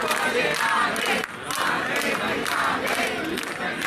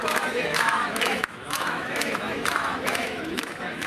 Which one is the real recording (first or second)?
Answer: first